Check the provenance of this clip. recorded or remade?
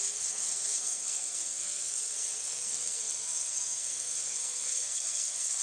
remade